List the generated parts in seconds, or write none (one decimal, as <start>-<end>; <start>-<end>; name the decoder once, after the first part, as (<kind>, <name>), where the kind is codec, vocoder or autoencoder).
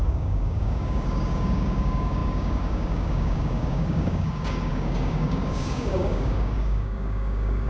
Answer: 0.0-7.7 (codec, DAC)